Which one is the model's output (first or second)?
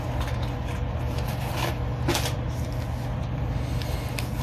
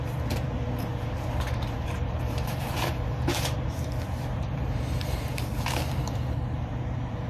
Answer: second